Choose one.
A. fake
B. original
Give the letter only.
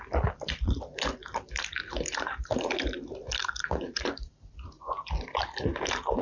B